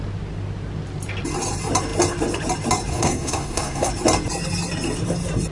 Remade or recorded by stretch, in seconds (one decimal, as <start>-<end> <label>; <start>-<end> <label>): 0.0-2.9 recorded; 2.9-3.9 remade; 3.9-5.5 recorded